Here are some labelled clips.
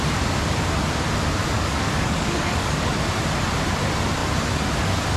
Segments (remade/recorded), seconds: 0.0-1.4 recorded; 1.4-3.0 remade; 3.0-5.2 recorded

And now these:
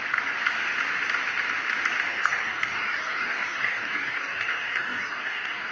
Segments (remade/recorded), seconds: 0.0-2.1 recorded; 2.1-5.7 remade